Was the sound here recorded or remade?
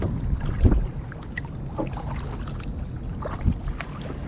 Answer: recorded